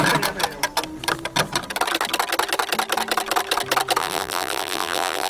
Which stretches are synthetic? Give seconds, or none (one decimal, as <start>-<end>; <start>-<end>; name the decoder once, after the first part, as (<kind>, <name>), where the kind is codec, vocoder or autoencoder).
4.0-5.3 (vocoder, BigVGAN v2)

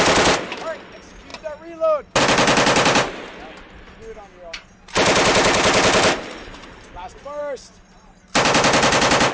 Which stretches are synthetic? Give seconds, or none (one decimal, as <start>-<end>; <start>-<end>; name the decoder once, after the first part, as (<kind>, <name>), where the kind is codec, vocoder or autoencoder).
6.5-7.4 (vocoder, BigVGAN v2)

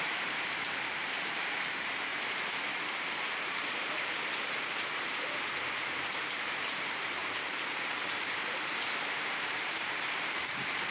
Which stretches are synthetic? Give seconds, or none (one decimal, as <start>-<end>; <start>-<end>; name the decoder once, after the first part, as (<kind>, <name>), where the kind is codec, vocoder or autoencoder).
0.0-10.9 (vocoder, BigVGAN v2)

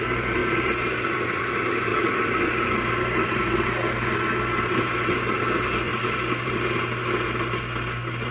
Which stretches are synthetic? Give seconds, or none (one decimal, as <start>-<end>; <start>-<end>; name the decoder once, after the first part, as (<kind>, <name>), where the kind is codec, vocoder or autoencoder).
0.4-1.4 (vocoder, BigVGAN v2); 1.9-3.4; 5.9-6.7

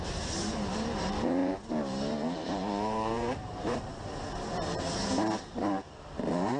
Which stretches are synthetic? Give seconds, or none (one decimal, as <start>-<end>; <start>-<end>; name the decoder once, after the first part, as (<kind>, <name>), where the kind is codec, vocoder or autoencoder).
0.0-3.9 (vocoder, BigVGAN v2); 4.5-6.6

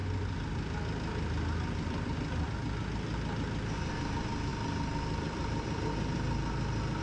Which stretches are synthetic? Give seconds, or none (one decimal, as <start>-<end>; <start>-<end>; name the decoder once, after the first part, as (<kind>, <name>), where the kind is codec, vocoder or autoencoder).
4.5-7.0 (vocoder, BigVGAN v2)